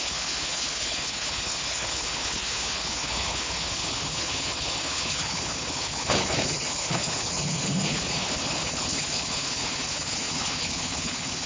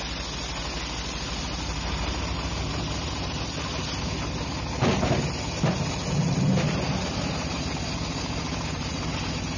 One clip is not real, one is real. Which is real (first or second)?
second